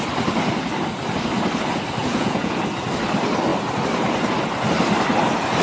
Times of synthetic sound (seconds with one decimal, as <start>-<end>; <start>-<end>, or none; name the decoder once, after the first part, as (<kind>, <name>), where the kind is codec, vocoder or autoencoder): 2.0-2.6 (vocoder, Vocos)